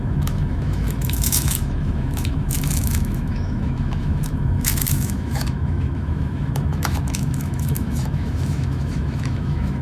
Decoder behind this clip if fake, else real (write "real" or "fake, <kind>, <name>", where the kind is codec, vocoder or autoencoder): fake, autoencoder, DAC-VAE